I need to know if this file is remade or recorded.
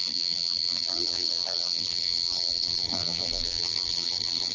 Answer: remade